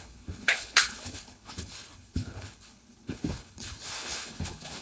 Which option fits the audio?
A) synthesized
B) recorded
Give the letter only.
A